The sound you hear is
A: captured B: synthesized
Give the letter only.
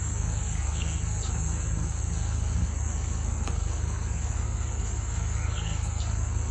B